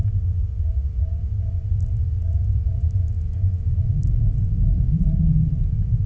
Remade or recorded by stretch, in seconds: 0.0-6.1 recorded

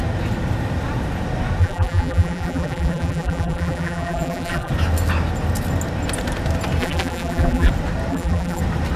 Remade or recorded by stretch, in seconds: 0.0-1.6 recorded; 1.6-4.7 remade; 4.7-6.8 recorded; 6.8-7.7 remade; 7.7-8.1 recorded; 8.1-8.6 remade; 8.6-9.0 recorded

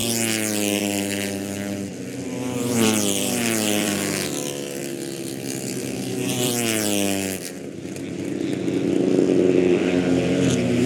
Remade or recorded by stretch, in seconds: 0.0-0.8 recorded; 0.8-1.9 remade; 1.9-2.6 recorded; 2.6-10.9 remade

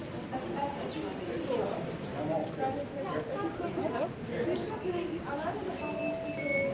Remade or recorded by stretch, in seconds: 0.0-6.7 recorded

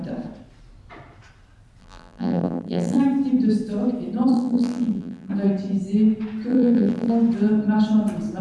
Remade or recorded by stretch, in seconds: 0.0-1.8 recorded; 1.8-3.0 remade; 3.0-4.3 recorded; 4.3-5.3 remade; 5.3-6.5 recorded; 6.5-7.1 remade; 7.1-8.4 recorded